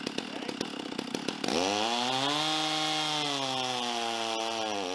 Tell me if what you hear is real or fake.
real